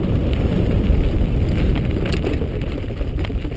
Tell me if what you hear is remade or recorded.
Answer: recorded